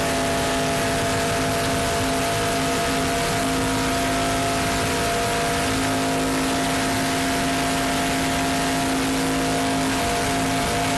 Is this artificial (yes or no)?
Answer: no